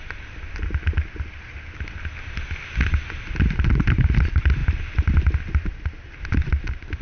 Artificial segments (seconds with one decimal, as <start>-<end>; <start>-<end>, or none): none